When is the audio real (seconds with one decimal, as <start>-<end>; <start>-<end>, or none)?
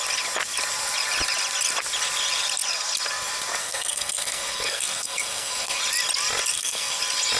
0.0-3.6; 5.8-6.5; 7.0-7.4